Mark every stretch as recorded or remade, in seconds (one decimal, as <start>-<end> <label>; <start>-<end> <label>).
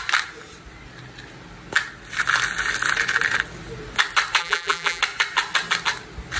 0.0-4.4 recorded; 4.4-5.0 remade; 5.0-6.4 recorded